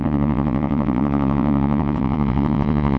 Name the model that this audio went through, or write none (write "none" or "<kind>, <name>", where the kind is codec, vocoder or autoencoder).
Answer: vocoder, WaveNeXt